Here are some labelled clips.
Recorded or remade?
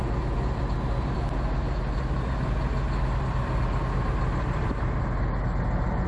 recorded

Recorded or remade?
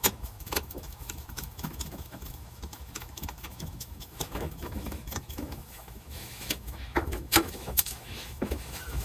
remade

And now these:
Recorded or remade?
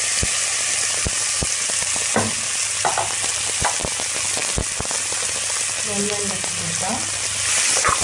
recorded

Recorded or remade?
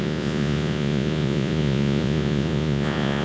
remade